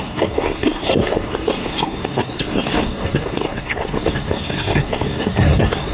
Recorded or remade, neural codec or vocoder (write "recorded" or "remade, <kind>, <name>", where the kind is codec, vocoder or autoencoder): remade, codec, SNAC